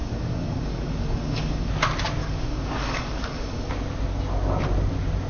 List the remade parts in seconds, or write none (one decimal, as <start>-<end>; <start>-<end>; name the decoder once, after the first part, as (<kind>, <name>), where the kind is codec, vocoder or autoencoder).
0.0-1.7 (codec, DAC); 2.2-3.7